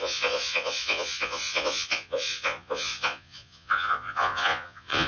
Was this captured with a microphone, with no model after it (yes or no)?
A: no